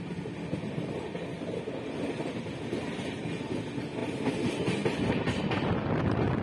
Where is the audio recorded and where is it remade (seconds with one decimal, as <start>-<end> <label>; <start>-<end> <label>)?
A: 0.0-6.4 recorded